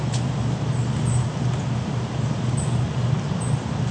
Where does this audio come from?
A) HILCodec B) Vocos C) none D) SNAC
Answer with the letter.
C